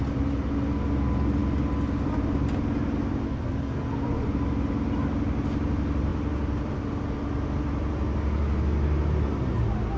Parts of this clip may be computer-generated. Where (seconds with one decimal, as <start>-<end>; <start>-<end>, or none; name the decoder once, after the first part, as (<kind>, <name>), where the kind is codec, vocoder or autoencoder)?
none